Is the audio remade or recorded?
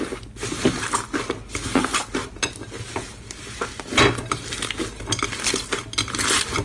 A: recorded